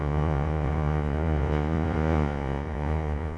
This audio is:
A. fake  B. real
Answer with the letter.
A